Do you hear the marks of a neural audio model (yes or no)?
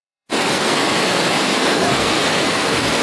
yes